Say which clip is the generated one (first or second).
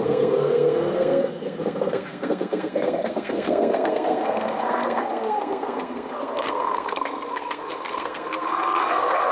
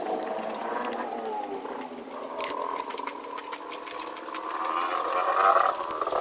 first